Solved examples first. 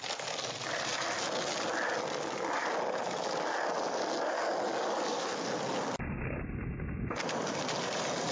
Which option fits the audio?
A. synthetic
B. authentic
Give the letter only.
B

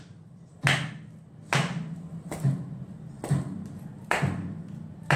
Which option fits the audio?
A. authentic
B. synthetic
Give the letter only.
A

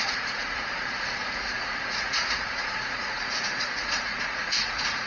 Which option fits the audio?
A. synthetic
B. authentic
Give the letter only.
A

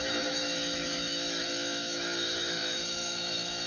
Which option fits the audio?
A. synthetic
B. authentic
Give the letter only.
A